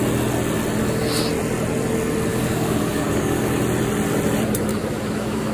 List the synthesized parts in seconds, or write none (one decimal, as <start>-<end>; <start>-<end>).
2.3-3.6; 4.7-5.5